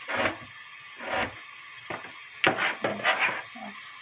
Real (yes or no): yes